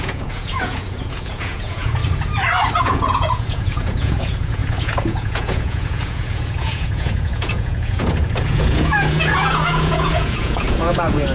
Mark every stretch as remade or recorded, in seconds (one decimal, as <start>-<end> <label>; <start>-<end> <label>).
0.0-2.0 remade; 2.0-2.8 recorded; 2.8-11.3 remade